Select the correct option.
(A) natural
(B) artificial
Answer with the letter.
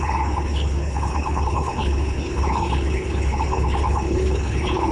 B